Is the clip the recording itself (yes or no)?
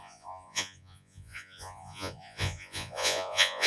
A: no